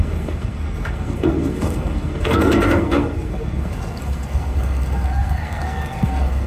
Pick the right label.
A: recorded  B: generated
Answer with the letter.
B